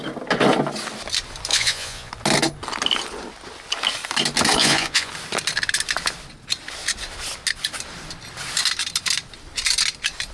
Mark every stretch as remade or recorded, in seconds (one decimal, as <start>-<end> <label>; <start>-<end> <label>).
0.0-1.5 recorded; 1.5-2.1 remade; 2.1-4.6 recorded; 4.6-5.1 remade; 5.1-10.3 recorded